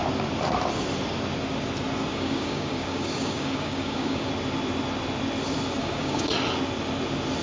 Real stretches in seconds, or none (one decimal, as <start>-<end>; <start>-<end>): 0.0-2.1; 4.3-5.8; 6.3-7.4